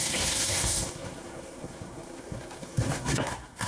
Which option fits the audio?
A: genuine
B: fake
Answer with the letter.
B